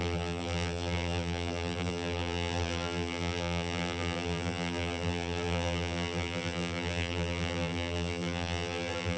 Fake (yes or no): yes